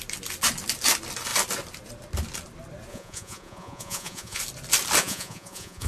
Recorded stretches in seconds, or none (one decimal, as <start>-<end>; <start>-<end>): 0.0-2.9; 4.4-5.0